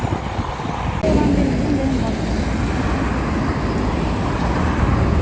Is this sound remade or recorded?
recorded